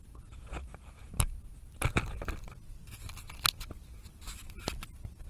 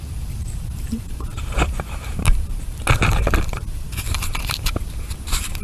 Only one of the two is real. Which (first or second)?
first